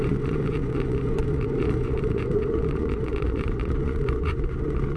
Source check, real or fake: fake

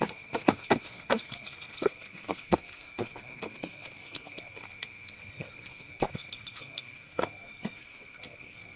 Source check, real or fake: fake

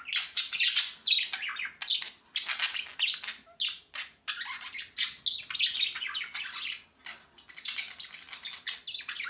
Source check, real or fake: real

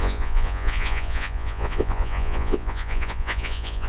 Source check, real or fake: fake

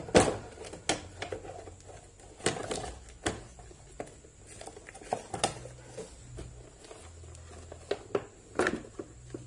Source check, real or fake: real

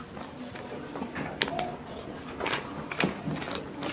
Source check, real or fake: real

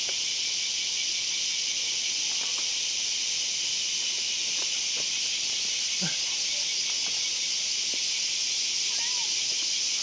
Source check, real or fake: real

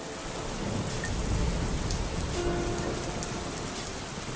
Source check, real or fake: real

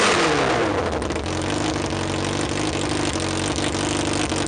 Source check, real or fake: real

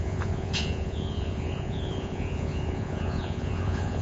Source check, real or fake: fake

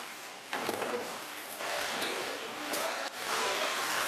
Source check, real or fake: fake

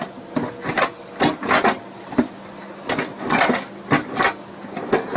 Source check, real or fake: real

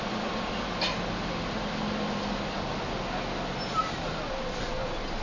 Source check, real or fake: real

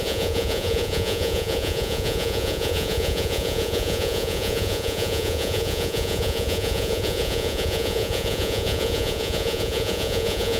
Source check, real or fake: fake